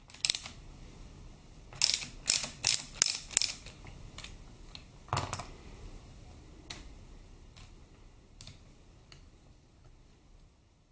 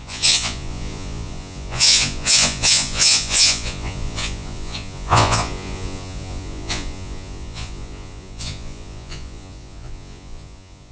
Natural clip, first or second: first